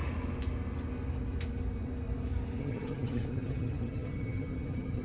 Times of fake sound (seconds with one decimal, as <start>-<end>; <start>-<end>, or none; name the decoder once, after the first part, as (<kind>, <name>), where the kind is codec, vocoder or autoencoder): 2.6-5.0 (vocoder, HiFi-GAN)